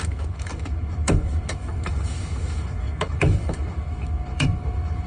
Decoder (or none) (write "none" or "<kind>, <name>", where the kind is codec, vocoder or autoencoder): autoencoder, DAC-VAE